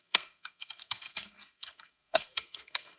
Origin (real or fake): fake